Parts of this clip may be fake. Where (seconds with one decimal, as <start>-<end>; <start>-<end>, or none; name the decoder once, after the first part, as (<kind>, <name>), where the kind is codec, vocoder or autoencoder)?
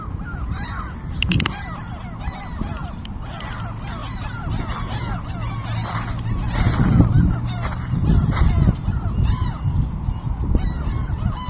none